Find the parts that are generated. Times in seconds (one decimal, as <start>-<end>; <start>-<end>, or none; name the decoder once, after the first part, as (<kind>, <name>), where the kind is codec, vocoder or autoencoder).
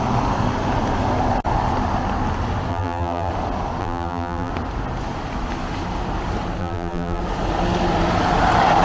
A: 2.7-3.3 (vocoder, BigVGAN v2); 3.8-4.5; 6.6-7.2